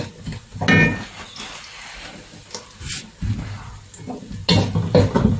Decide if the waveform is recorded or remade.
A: recorded